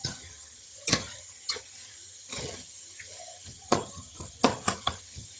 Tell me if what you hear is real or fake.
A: fake